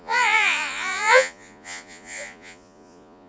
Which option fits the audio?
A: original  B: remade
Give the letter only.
B